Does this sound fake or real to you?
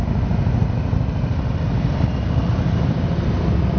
real